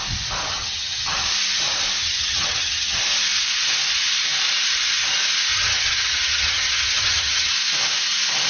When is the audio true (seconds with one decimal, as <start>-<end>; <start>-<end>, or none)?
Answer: 0.0-0.5; 1.3-2.0; 3.0-5.5; 7.5-8.5